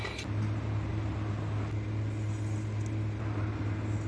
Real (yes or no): yes